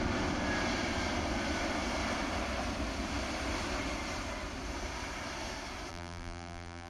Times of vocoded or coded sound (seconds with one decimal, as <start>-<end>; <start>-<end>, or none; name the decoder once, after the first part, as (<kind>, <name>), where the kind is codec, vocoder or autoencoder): 5.9-6.9 (vocoder, BigVGAN v2)